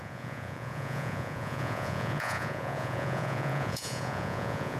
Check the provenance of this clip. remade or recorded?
remade